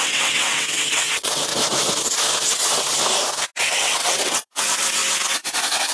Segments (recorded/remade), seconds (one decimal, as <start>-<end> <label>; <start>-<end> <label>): 0.0-1.5 remade; 1.5-2.5 recorded; 2.5-3.0 remade; 3.0-3.6 recorded; 3.6-5.0 remade; 5.0-5.9 recorded

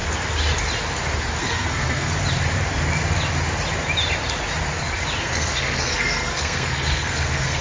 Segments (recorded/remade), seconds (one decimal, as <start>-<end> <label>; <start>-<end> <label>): 0.0-1.4 recorded; 1.4-2.1 remade; 2.1-5.2 recorded; 5.2-7.6 remade

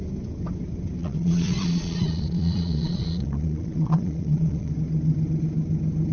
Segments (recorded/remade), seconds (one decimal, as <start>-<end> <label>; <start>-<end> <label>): 0.0-1.0 recorded; 1.0-4.7 remade; 4.7-6.1 recorded

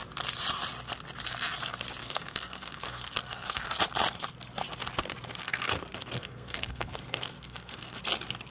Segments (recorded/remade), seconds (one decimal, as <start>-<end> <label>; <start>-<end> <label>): 0.0-2.0 recorded; 2.0-3.8 remade; 3.8-5.4 recorded; 5.4-8.0 remade; 8.0-8.5 recorded

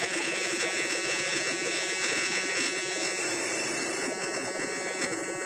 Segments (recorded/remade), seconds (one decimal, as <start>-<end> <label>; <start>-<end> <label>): 0.0-3.2 remade; 3.2-4.0 recorded; 4.0-5.5 remade